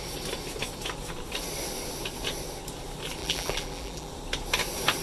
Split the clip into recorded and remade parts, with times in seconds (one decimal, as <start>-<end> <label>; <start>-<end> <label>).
0.0-3.2 recorded; 3.2-4.1 remade; 4.1-5.0 recorded